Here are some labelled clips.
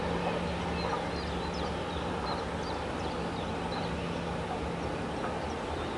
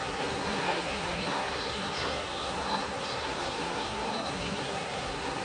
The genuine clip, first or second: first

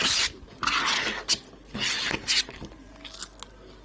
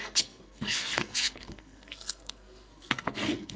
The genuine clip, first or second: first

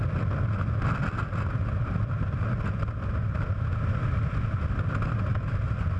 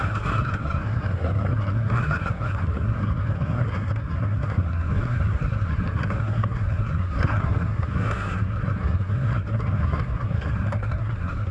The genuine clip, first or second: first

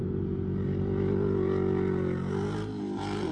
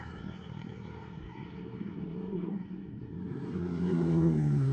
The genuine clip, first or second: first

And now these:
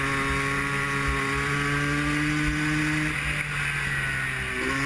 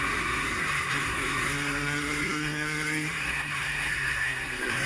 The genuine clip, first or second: first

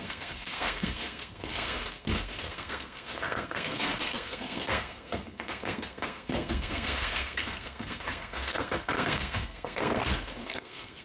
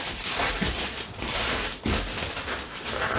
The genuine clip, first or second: second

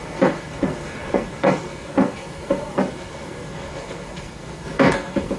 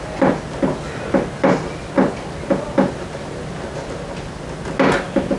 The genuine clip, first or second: second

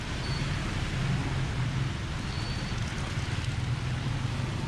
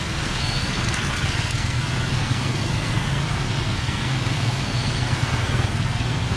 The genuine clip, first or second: first